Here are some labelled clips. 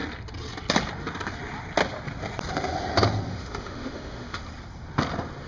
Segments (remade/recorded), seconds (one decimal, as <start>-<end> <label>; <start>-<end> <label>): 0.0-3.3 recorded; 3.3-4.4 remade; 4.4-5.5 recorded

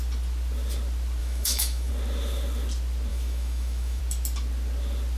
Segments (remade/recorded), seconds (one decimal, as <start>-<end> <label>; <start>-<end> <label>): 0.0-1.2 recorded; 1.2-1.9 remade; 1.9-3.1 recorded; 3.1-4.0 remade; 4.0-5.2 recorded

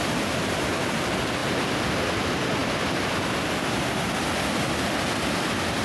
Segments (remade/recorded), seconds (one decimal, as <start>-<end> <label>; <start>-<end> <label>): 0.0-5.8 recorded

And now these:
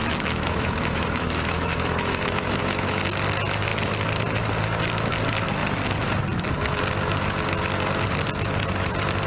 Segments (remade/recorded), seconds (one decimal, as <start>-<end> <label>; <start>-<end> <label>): 0.0-3.0 remade; 3.0-9.3 recorded

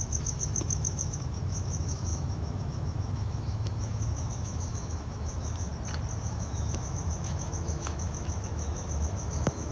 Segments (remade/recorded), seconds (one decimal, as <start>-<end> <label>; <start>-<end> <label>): 0.0-5.7 remade; 5.7-6.2 recorded; 6.2-9.7 remade

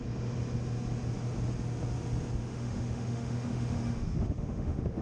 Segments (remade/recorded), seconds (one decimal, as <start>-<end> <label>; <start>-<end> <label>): 0.0-2.4 recorded; 2.4-5.0 remade

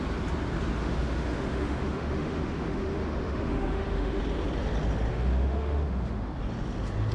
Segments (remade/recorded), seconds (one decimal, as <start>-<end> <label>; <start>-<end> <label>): 0.0-0.8 recorded; 0.8-4.2 remade; 4.2-5.1 recorded; 5.1-6.3 remade; 6.3-7.1 recorded

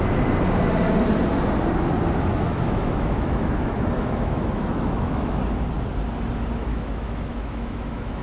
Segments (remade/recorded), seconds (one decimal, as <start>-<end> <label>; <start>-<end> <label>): 0.0-2.3 recorded; 2.3-5.4 remade; 5.4-6.7 recorded; 6.7-8.2 remade